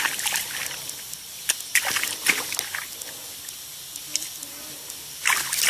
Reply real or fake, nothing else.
real